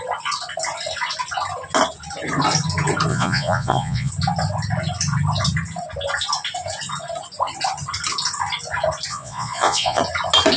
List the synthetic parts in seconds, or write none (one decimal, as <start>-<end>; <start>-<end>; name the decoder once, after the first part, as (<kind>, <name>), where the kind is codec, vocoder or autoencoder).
3.1-4.1 (vocoder, Vocos); 9.1-10.0